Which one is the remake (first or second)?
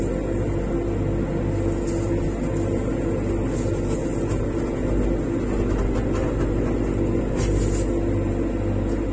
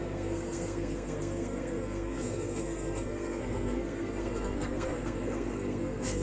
second